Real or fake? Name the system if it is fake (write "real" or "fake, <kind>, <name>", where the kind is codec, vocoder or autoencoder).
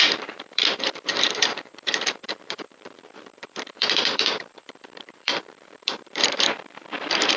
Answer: fake, vocoder, BigVGAN v2